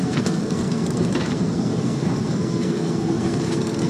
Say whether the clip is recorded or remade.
remade